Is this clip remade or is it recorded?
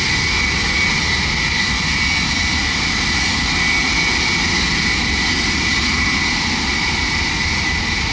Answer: recorded